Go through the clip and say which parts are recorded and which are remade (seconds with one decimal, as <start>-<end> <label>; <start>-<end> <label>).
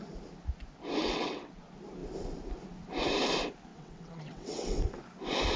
0.0-1.0 recorded; 1.0-1.6 remade; 1.6-3.7 recorded; 3.7-5.0 remade; 5.0-5.6 recorded